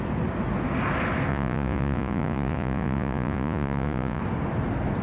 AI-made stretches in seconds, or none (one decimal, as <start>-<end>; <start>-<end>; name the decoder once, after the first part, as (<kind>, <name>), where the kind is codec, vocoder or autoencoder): 1.3-4.2 (vocoder, Vocos)